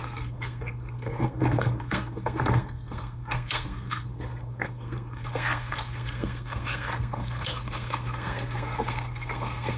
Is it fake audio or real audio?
fake